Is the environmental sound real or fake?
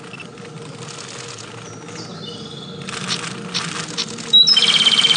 real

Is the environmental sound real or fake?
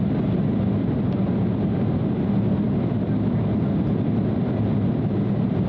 real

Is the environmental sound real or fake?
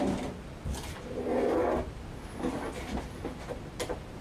real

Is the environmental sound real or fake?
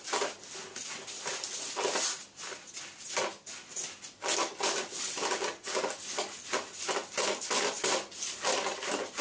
real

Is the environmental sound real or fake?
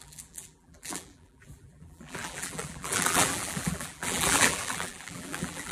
fake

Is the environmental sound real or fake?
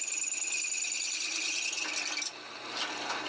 real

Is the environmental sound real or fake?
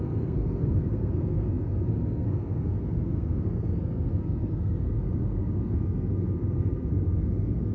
fake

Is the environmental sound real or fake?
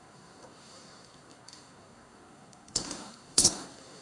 fake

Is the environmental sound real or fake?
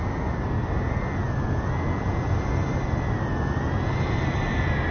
real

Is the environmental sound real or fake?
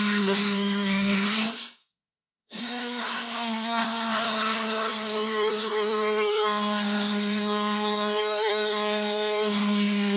fake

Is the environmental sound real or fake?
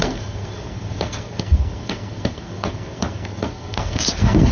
fake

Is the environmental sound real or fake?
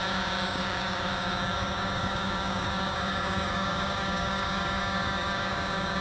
fake